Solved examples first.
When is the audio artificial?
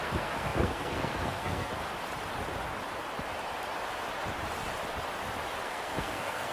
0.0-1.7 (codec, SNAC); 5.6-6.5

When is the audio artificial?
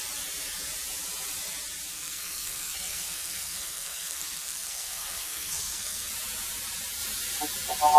1.9-6.1 (codec, SNAC)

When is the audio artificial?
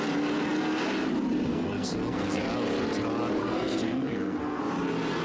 1.5-2.4 (codec, SNAC); 3.4-4.6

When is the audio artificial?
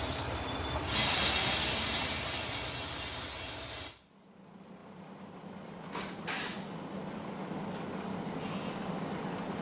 none